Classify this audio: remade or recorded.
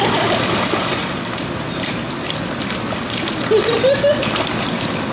recorded